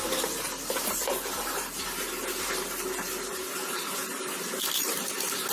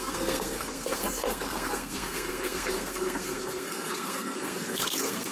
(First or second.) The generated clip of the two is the second